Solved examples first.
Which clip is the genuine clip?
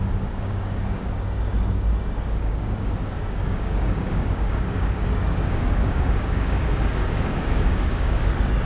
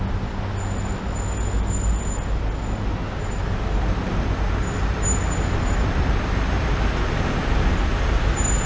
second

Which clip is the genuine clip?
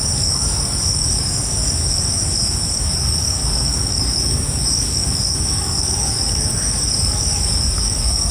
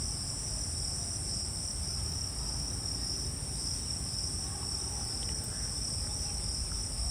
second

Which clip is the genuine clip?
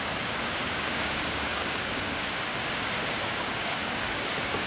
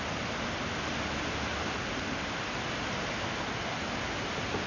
second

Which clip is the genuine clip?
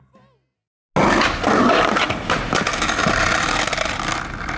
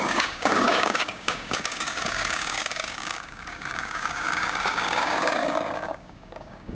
first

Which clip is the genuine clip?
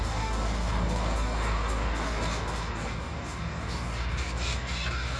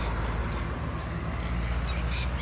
second